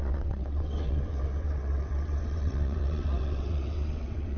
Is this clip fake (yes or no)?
yes